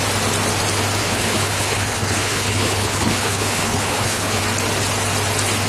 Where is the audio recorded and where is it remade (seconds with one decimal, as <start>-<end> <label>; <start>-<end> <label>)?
0.0-1.0 recorded; 1.0-4.4 remade; 4.4-5.7 recorded